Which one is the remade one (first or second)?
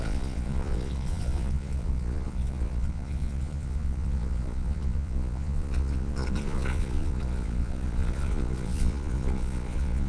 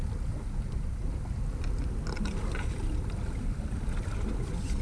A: first